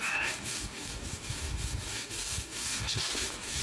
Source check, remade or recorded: remade